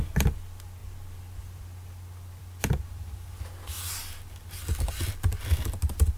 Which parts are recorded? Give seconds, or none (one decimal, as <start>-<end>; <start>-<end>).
0.0-6.2